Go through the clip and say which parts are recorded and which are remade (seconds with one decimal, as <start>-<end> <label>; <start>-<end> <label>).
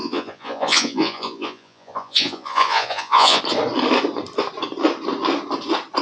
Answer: 0.0-3.4 remade; 3.4-6.0 recorded